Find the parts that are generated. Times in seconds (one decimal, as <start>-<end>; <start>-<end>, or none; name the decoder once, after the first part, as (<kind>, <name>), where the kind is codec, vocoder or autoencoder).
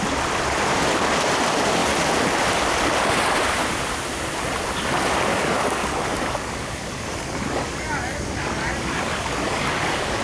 5.3-10.2 (codec, DAC)